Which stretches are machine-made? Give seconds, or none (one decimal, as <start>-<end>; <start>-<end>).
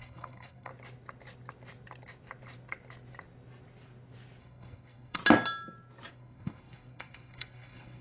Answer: 0.0-0.7; 4.4-5.2; 6.1-8.0